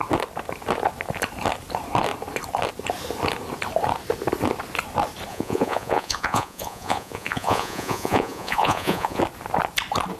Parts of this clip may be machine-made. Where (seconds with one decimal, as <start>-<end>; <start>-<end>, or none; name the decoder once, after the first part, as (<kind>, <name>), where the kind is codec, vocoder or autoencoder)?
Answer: 5.3-9.2 (vocoder, Vocos)